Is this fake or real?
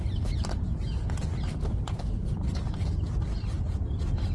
real